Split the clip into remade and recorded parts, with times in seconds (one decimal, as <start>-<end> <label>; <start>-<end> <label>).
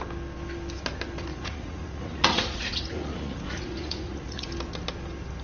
0.0-1.3 recorded; 1.3-4.5 remade; 4.5-5.4 recorded